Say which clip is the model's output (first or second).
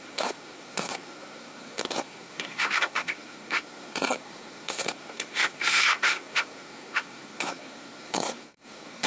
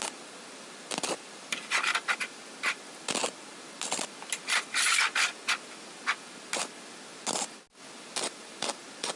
first